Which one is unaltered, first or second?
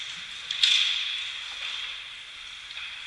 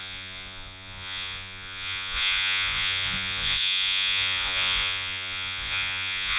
first